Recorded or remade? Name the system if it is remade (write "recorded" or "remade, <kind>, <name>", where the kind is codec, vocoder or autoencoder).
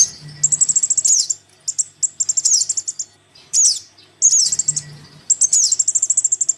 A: recorded